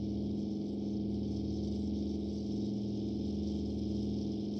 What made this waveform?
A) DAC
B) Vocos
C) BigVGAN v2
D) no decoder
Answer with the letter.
D